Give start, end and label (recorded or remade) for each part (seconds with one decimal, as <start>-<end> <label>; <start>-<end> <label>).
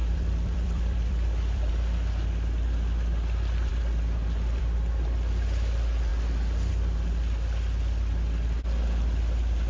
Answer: 0.0-1.7 remade; 1.7-9.7 recorded